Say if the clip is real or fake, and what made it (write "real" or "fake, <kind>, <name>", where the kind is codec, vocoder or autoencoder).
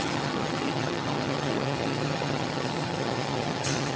fake, vocoder, HiFi-GAN